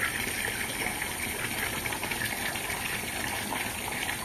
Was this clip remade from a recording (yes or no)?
no